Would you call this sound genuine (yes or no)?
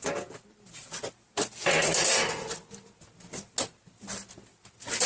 yes